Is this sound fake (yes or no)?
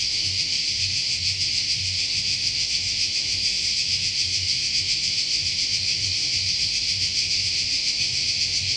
yes